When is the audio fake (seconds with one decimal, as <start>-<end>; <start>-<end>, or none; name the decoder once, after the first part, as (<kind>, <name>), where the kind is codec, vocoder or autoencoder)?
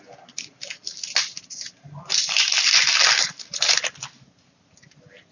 none